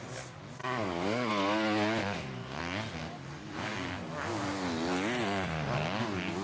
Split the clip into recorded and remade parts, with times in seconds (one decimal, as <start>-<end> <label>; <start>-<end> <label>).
0.0-0.6 recorded; 0.6-1.3 remade; 1.3-2.0 recorded; 2.0-2.6 remade; 2.6-3.0 recorded; 3.0-4.5 remade; 4.5-6.4 recorded